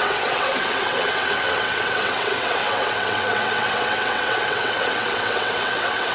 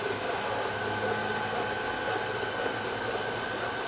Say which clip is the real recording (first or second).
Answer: second